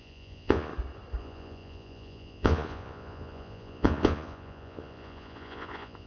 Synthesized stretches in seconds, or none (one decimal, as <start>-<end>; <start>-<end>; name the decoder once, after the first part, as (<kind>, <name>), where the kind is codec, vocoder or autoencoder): 0.0-0.7 (vocoder, Vocos); 1.2-6.1

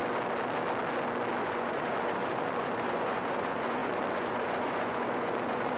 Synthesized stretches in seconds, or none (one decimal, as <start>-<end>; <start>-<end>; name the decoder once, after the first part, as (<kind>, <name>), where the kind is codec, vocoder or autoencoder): 1.4-5.8 (vocoder, Vocos)

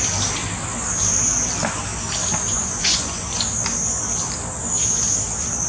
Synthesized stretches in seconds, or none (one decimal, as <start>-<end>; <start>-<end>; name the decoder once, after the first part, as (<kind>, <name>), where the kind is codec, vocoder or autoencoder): 2.4-3.3 (vocoder, Vocos)